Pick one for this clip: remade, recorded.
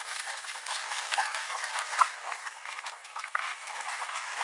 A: remade